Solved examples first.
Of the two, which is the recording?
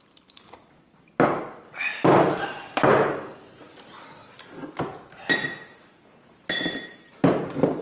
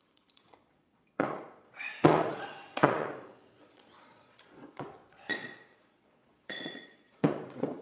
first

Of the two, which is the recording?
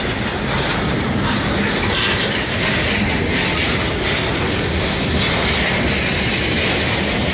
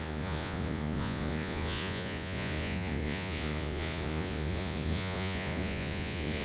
first